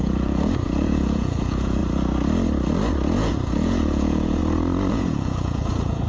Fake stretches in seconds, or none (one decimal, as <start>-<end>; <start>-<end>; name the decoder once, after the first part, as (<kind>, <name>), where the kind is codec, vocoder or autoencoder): 0.0-1.8 (vocoder, Vocos); 3.2-4.4; 4.9-6.1